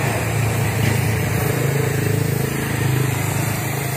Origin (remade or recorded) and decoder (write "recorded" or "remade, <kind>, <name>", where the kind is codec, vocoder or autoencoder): remade, vocoder, BigVGAN v2